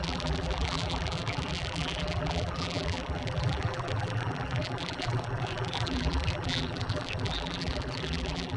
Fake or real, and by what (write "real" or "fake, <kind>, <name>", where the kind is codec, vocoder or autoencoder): fake, vocoder, BigVGAN v2